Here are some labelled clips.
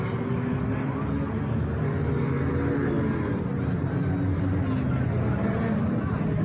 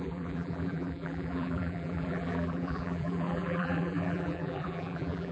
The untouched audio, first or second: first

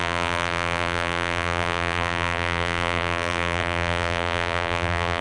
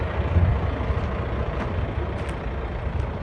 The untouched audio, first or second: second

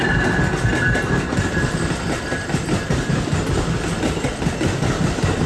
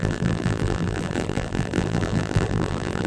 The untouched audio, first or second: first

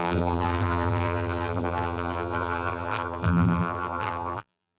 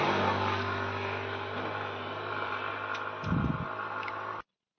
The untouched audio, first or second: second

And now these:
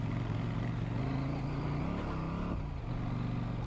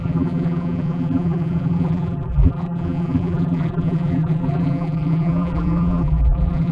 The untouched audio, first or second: first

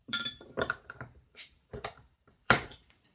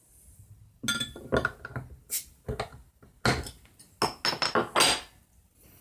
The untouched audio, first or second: second